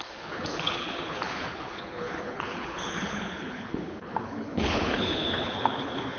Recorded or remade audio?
remade